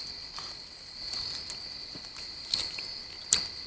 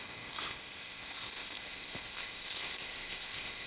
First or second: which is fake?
second